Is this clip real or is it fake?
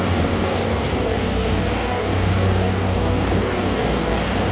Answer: fake